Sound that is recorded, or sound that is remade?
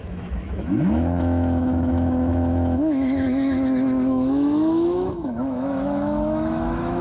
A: remade